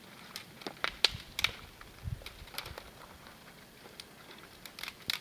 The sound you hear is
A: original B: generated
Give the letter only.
A